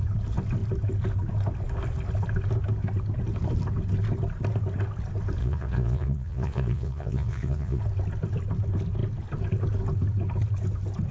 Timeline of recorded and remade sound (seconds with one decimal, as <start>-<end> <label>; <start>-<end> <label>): 0.0-5.4 recorded; 5.4-7.8 remade; 7.8-11.1 recorded